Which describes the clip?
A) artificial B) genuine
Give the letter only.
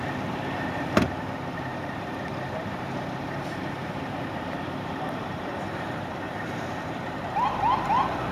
A